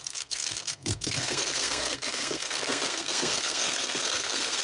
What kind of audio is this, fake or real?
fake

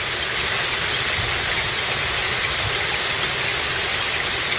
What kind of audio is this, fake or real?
real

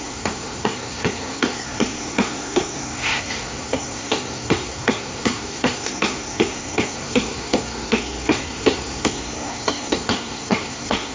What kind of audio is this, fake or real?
fake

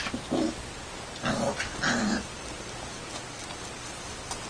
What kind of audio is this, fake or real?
real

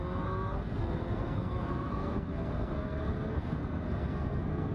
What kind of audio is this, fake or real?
fake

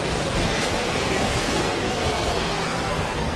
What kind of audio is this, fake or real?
fake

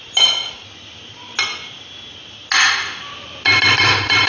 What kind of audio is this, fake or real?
real